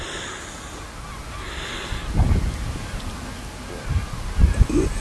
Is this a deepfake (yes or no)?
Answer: no